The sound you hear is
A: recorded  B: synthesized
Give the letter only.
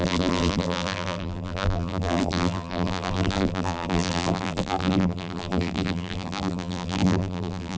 B